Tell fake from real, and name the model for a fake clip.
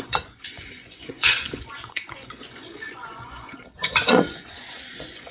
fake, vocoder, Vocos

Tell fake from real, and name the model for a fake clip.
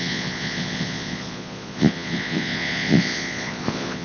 fake, vocoder, Vocos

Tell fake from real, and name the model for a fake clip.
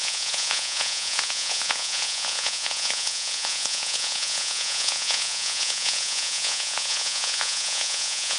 fake, vocoder, Vocos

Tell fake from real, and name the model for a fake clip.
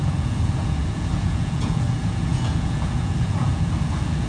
fake, vocoder, Vocos